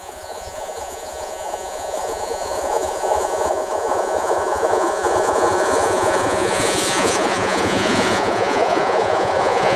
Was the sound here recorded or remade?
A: remade